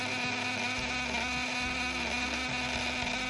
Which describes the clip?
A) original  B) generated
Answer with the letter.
A